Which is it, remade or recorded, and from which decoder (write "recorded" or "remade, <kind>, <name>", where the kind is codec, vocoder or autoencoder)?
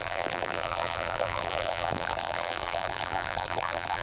remade, vocoder, BigVGAN v2